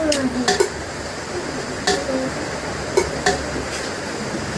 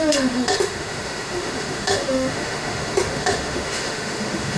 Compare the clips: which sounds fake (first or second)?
second